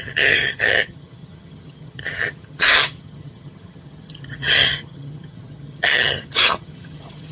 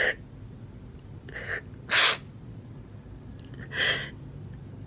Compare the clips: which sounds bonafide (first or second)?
second